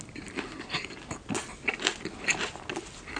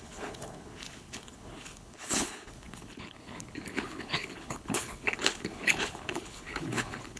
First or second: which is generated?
second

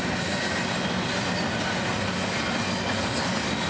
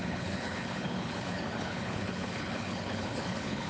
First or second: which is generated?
second